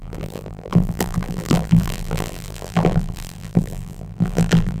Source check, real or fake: fake